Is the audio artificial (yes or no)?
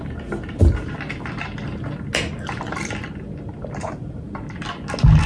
no